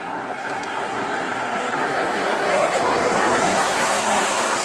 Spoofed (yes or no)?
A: yes